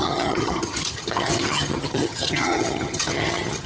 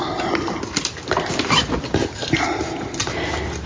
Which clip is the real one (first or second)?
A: second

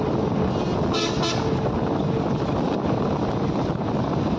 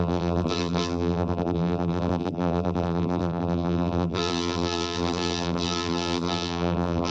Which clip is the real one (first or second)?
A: first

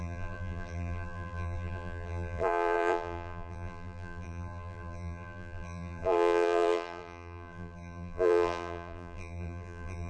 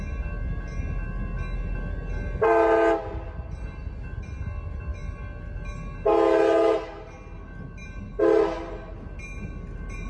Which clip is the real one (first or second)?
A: second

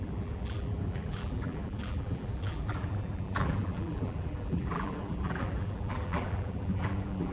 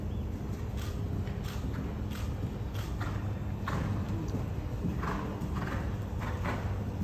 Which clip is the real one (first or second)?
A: second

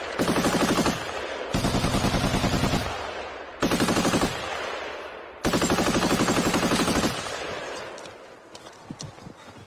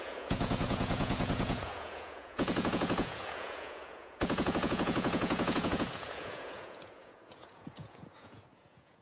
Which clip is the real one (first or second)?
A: first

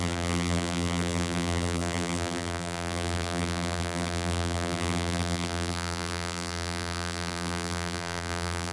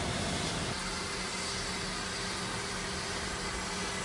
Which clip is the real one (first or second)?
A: second